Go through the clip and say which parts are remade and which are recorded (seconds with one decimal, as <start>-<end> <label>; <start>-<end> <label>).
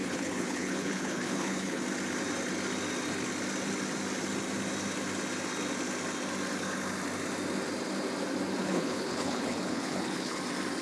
0.0-1.8 remade; 1.8-8.6 recorded; 8.6-10.4 remade; 10.4-10.8 recorded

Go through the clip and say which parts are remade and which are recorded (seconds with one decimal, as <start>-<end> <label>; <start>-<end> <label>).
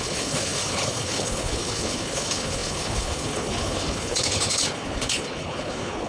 0.0-6.1 remade